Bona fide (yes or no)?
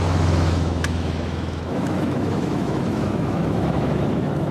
no